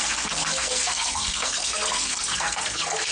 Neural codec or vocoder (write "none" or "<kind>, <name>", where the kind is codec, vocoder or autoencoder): codec, SNAC